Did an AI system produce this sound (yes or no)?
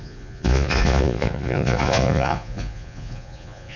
yes